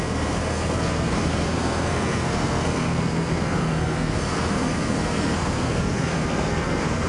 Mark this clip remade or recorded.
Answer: remade